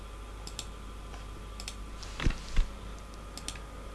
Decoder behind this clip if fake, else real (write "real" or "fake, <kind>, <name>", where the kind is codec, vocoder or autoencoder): real